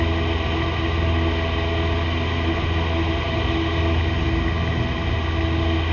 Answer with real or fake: real